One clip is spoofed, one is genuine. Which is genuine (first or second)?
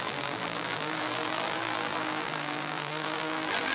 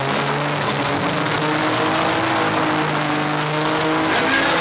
second